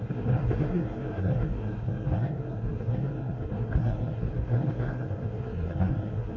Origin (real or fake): fake